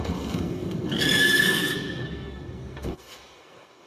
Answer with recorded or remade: remade